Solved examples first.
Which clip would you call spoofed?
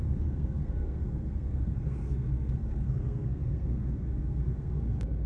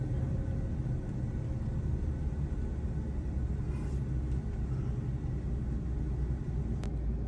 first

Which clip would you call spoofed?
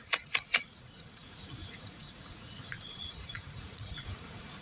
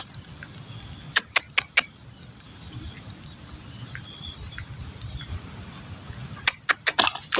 first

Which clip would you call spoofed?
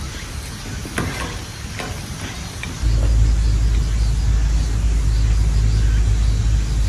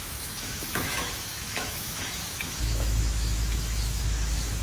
second